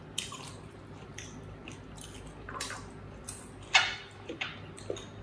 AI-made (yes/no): no